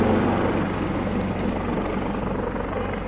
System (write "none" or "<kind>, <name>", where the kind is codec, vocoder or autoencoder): none